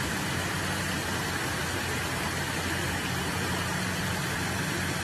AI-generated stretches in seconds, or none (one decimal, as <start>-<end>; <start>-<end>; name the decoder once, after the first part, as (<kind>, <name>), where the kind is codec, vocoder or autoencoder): none